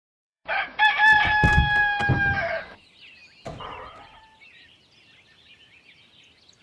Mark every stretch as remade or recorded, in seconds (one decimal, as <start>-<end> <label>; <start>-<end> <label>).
0.0-0.8 remade; 0.8-6.6 recorded